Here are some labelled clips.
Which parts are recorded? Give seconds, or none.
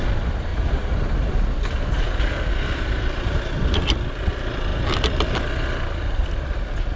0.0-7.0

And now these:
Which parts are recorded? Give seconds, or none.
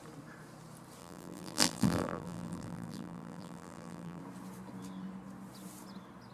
0.0-1.0; 4.2-6.3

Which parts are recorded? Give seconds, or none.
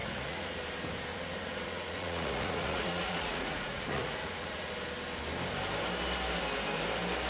0.6-1.1; 4.7-7.3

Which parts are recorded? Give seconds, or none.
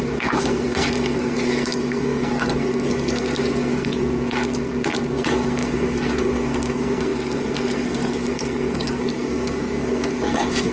none